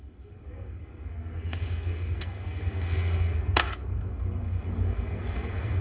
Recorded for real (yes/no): no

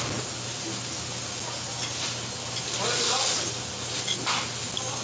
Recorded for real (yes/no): yes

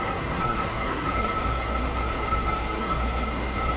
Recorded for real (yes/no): no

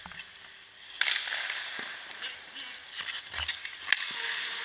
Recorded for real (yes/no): yes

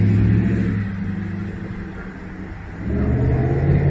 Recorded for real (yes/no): yes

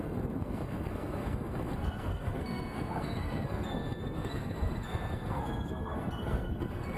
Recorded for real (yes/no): no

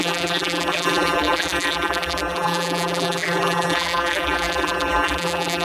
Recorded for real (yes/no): no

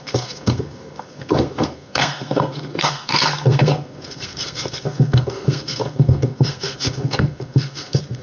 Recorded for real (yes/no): no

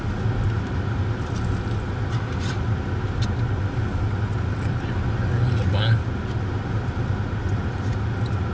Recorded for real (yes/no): yes